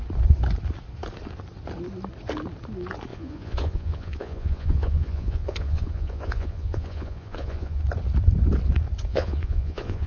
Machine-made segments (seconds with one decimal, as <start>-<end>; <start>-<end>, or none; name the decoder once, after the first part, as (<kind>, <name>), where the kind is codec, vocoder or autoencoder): 3.1-7.8 (vocoder, Vocos); 9.1-10.1